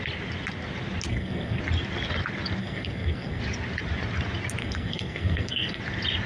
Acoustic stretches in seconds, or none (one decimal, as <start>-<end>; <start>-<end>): 0.0-1.1; 1.6-2.6; 3.4-4.6; 5.8-6.3